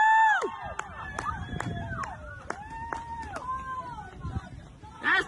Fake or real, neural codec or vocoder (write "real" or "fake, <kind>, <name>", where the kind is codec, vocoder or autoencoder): real